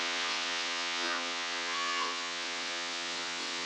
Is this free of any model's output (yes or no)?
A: no